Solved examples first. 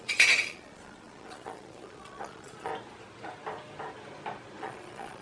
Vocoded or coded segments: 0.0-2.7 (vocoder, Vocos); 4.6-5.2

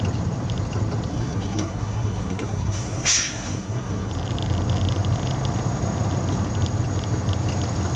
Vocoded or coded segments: 1.1-4.1 (codec, SNAC)